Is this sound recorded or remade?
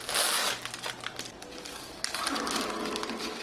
recorded